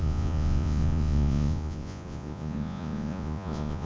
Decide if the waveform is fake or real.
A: fake